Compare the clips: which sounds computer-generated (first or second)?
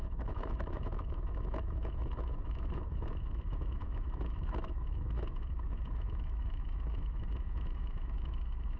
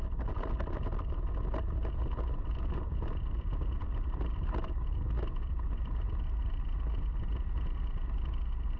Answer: first